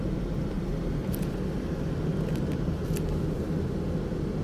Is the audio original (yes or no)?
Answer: yes